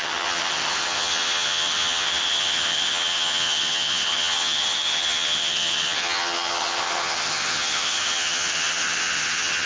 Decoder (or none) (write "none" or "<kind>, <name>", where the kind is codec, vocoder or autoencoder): vocoder, HiFi-GAN